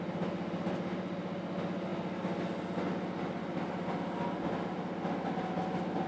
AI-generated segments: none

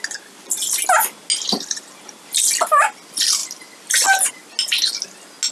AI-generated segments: none